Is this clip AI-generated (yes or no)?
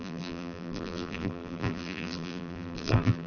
yes